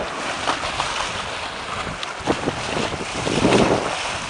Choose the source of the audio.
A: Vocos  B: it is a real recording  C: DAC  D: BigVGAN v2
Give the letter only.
B